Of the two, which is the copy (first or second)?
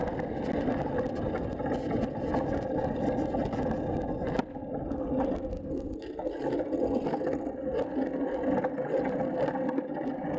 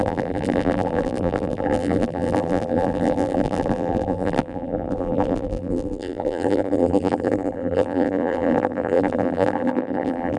second